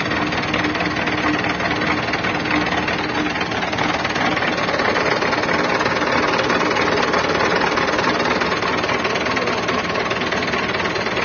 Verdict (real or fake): real